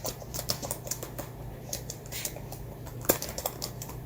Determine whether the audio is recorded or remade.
remade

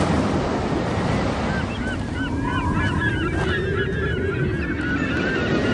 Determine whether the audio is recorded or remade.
recorded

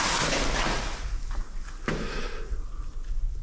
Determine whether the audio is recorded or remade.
recorded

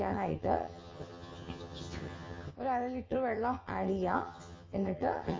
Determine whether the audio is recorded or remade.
remade